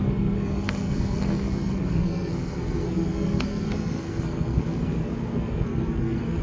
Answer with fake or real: fake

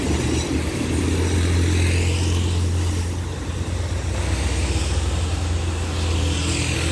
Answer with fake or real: real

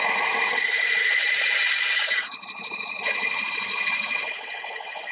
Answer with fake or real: real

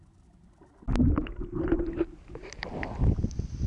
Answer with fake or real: real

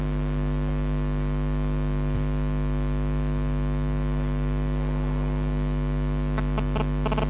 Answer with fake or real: real